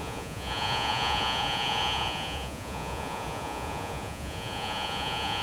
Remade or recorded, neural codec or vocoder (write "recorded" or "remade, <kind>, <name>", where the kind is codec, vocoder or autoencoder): remade, vocoder, Vocos